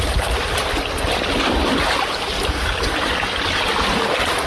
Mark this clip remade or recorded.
recorded